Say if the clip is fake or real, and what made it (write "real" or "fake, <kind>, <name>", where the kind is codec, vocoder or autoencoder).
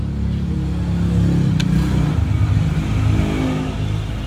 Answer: real